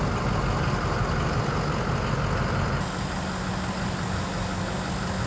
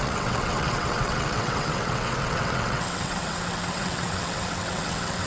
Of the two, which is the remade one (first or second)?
second